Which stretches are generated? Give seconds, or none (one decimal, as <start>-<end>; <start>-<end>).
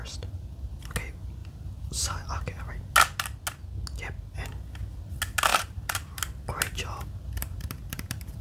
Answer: 1.4-2.7; 5.5-6.2; 7.4-8.4